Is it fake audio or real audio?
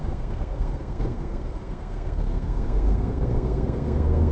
fake